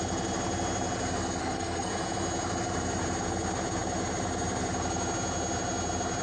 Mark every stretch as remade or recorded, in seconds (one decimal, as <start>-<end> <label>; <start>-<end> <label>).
0.0-1.4 recorded; 1.4-1.9 remade; 1.9-6.2 recorded